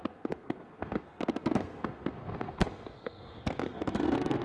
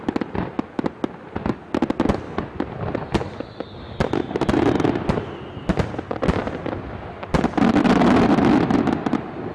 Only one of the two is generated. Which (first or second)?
first